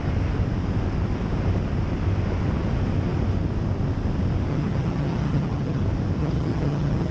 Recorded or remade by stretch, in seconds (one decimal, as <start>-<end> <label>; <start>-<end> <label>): 0.0-4.5 recorded; 4.5-5.8 remade; 5.8-6.2 recorded; 6.2-7.1 remade